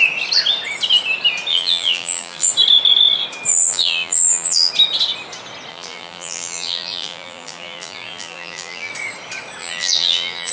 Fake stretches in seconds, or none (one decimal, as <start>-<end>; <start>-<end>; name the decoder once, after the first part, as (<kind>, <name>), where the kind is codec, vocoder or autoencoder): 1.5-2.5 (vocoder, BigVGAN v2); 3.5-4.7; 5.7-8.9; 9.6-10.5